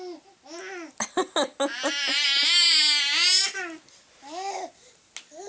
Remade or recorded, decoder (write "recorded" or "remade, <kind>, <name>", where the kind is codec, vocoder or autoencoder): recorded